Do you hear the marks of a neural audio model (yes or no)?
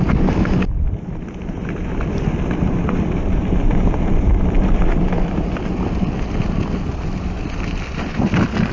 yes